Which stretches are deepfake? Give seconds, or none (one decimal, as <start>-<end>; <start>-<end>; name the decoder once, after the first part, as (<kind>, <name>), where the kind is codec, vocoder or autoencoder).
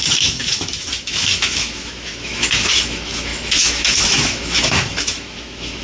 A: 0.0-5.8 (autoencoder, DAC-VAE)